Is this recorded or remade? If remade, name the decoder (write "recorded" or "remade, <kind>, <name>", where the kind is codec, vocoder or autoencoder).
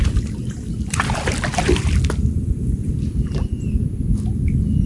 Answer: recorded